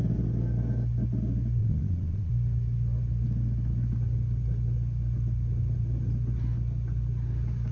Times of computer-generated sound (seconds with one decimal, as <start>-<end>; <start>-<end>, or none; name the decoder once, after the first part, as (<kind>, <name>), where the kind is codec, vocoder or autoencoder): 1.6-2.3 (vocoder, Vocos)